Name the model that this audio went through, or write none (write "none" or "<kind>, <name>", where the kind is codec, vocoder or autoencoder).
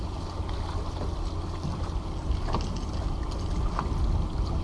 none